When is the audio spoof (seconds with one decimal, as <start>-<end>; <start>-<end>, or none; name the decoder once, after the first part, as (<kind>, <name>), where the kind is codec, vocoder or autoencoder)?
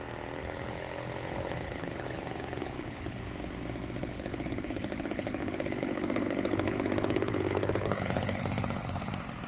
0.4-3.2 (codec, HILCodec); 4.0-9.1